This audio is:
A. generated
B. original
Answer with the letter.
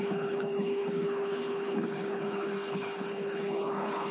A